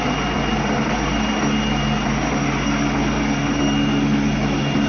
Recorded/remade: recorded